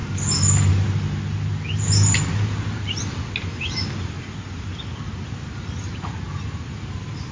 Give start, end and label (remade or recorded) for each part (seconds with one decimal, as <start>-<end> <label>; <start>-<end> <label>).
0.0-7.3 recorded